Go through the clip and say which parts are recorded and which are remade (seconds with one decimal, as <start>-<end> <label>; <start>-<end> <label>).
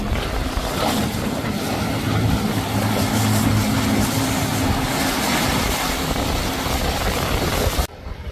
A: 0.0-8.3 recorded